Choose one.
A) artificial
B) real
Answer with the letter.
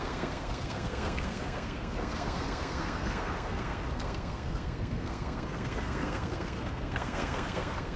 A